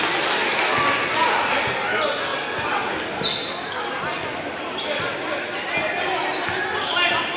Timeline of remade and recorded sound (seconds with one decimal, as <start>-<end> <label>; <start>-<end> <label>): 0.0-7.4 recorded